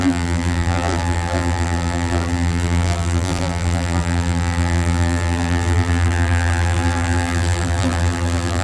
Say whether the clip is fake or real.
fake